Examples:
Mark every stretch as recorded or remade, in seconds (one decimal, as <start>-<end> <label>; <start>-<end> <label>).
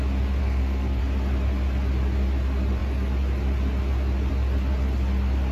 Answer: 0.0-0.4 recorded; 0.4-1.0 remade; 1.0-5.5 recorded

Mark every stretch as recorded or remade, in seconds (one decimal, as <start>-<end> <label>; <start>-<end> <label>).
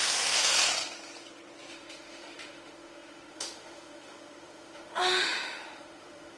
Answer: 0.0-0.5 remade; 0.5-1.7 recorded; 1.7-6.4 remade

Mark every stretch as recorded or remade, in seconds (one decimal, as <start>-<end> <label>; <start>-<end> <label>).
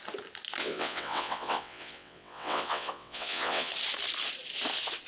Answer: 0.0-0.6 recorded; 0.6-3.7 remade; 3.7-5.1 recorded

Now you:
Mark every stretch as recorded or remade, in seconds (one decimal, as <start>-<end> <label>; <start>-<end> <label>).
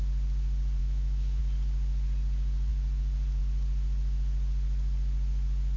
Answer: 0.0-0.8 recorded; 0.8-1.4 remade; 1.4-5.8 recorded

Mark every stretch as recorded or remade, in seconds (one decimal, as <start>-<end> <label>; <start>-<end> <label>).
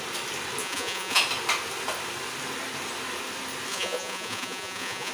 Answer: 0.0-0.6 recorded; 0.6-1.2 remade; 1.2-3.7 recorded; 3.7-5.1 remade